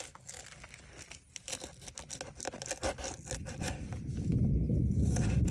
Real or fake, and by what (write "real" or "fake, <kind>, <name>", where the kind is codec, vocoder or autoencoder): real